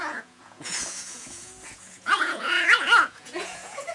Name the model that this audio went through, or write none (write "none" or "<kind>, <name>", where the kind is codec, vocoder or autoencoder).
vocoder, Vocos